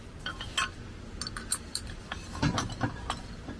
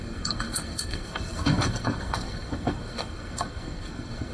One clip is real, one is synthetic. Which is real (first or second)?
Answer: first